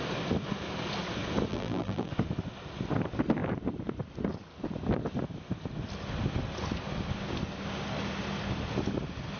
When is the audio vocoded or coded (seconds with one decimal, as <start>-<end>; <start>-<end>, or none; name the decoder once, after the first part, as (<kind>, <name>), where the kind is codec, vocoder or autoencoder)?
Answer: 1.5-2.1 (vocoder, BigVGAN v2)